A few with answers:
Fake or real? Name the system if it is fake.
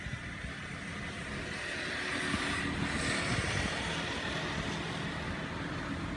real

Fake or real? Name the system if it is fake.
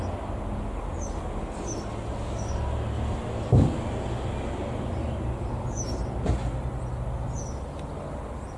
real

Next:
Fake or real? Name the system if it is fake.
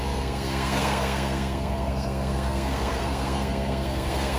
fake, codec, SNAC